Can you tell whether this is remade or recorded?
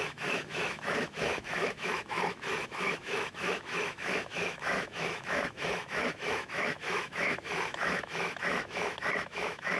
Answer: remade